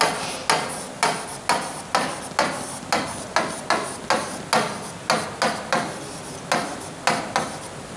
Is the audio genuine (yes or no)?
yes